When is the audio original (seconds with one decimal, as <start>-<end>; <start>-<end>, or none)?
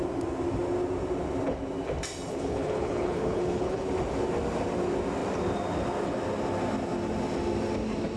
0.0-2.3; 3.9-8.2